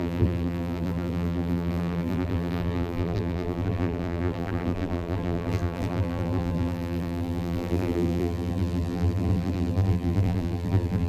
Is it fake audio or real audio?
fake